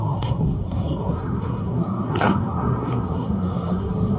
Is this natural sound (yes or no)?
no